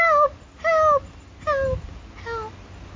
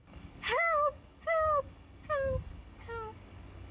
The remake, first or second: second